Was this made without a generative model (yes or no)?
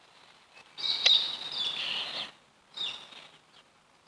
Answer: yes